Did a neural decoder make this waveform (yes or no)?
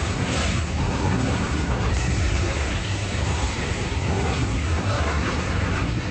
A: yes